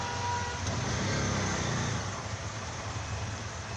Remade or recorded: recorded